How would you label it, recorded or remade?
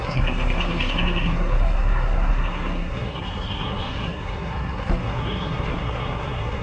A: remade